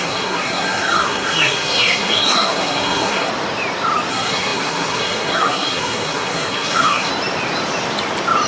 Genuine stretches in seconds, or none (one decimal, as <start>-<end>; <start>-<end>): 3.3-4.1; 7.1-8.5

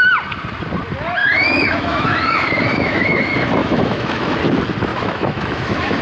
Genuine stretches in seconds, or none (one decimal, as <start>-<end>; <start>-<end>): 0.0-1.2; 3.2-3.6; 4.4-4.9

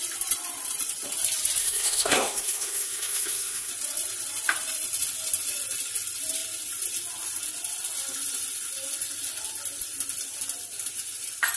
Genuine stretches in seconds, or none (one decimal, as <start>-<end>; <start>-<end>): 0.0-1.6; 3.7-11.6

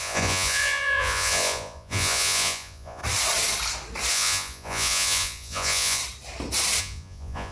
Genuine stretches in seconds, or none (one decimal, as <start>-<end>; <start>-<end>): 3.0-4.1; 6.0-6.8

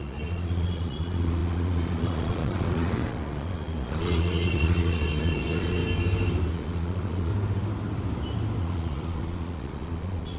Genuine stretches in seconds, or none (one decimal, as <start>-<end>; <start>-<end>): 5.8-6.5; 7.3-8.6

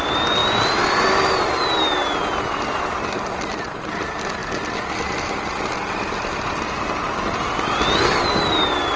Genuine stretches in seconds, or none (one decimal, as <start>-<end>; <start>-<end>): 0.0-9.0